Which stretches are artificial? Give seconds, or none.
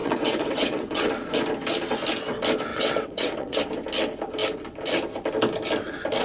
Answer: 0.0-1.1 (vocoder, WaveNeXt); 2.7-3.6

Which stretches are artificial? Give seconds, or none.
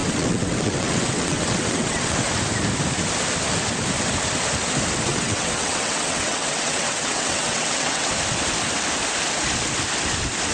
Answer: 0.0-2.3 (vocoder, WaveNeXt); 5.1-8.1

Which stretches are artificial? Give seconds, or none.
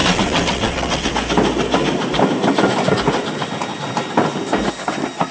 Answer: 0.0-1.1 (vocoder, WaveNeXt)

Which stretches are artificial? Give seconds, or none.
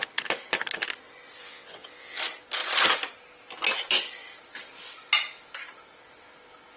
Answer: 1.4-2.2 (vocoder, WaveNeXt)